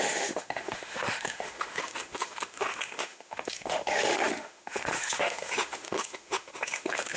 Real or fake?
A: fake